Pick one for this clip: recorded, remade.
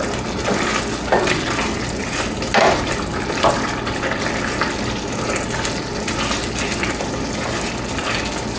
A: recorded